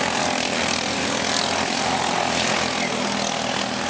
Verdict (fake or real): real